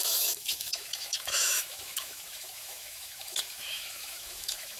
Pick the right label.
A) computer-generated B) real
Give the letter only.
A